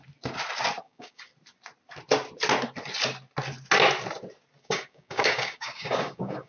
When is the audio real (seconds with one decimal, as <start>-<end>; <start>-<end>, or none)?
0.0-0.8; 1.3-4.6